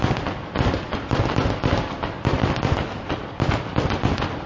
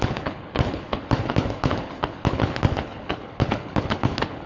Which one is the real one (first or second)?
first